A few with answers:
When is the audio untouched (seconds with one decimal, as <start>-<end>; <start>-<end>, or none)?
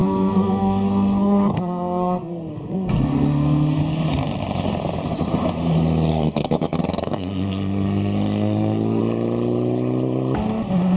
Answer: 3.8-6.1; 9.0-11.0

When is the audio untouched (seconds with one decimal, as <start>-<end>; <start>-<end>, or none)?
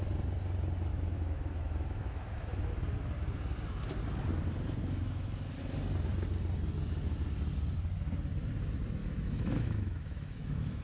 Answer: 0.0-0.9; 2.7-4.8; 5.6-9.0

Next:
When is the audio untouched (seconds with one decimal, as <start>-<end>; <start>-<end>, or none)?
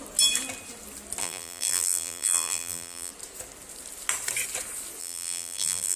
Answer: 0.0-1.2; 3.1-5.0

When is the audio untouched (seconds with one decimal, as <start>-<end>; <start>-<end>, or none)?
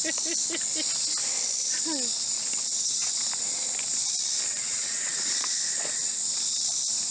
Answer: 0.0-2.7; 3.3-4.5; 5.4-7.1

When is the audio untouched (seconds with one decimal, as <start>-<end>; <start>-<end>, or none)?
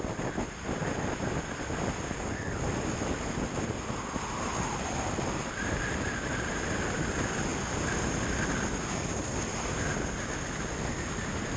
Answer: 0.0-11.6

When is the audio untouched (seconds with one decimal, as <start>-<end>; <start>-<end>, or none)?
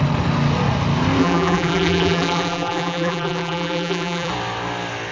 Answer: 0.0-1.2; 4.3-5.1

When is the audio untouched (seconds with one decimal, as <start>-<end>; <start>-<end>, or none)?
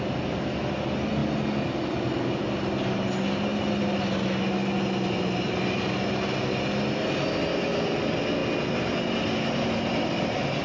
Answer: 0.0-10.6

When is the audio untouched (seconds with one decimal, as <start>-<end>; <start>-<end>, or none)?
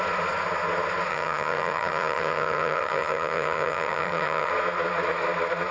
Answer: 0.0-1.1; 4.5-5.7